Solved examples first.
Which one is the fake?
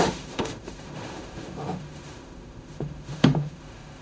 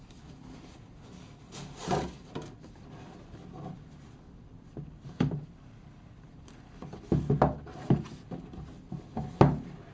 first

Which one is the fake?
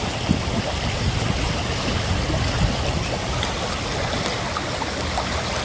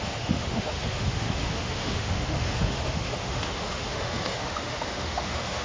second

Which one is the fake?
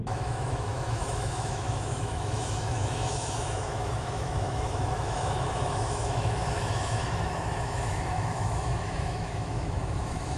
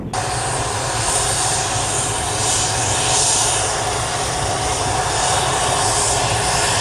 first